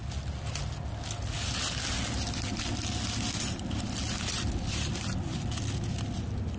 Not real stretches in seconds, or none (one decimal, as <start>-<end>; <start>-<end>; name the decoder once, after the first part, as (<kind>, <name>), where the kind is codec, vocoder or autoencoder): none